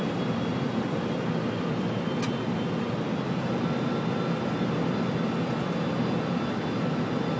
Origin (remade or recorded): recorded